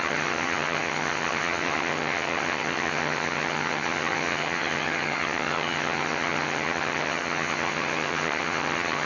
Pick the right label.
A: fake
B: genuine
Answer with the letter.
A